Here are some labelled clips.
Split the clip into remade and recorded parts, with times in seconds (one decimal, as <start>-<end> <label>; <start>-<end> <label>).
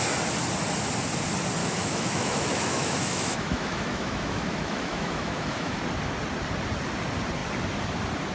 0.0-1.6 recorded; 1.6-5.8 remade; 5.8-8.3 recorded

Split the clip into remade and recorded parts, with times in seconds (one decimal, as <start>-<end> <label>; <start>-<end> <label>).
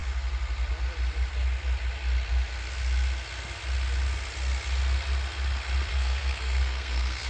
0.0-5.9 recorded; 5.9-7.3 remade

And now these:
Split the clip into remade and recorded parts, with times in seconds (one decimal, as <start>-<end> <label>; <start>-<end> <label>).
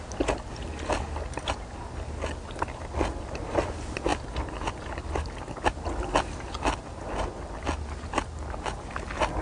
0.0-9.4 recorded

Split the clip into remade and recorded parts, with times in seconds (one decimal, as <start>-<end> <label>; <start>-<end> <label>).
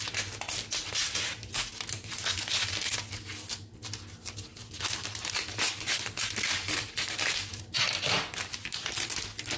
0.0-4.5 recorded; 4.5-9.1 remade; 9.1-9.6 recorded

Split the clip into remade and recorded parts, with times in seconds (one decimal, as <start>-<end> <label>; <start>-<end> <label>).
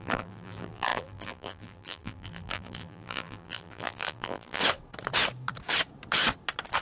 0.0-4.6 remade; 4.6-6.8 recorded